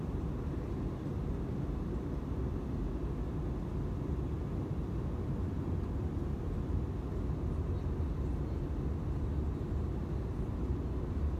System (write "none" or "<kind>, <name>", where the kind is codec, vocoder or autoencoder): none